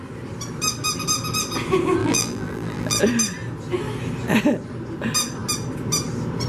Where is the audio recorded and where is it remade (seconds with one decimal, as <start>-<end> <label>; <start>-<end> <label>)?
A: 0.0-2.0 recorded; 2.0-3.0 remade; 3.0-6.5 recorded